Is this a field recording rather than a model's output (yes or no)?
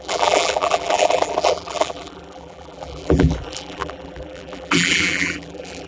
no